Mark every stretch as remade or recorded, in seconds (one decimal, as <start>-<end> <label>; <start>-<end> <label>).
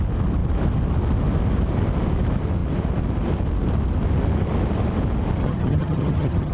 0.0-5.4 recorded; 5.4-6.5 remade